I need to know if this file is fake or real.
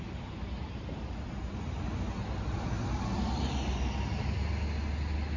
real